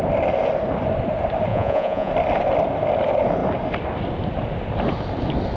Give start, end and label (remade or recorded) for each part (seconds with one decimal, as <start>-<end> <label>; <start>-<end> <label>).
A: 0.0-1.5 recorded; 1.5-2.1 remade; 2.1-5.6 recorded